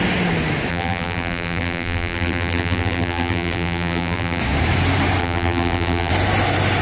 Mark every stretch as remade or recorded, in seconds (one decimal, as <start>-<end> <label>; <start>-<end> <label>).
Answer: 0.0-0.7 recorded; 0.7-4.4 remade; 4.4-5.2 recorded; 5.2-6.1 remade; 6.1-6.8 recorded